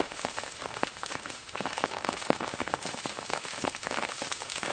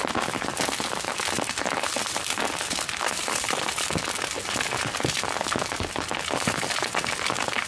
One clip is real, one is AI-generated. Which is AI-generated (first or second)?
first